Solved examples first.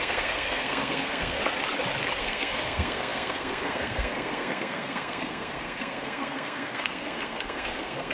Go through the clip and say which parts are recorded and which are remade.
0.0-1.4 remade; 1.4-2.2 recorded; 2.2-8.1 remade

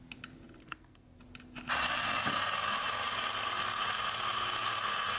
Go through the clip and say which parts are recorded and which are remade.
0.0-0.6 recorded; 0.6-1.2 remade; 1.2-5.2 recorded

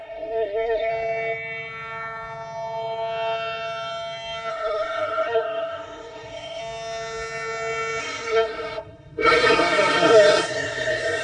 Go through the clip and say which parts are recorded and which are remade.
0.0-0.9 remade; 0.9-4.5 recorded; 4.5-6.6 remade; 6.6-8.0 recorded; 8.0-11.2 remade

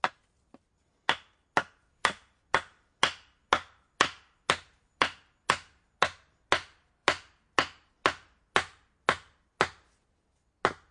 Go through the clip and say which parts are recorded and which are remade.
0.0-10.9 recorded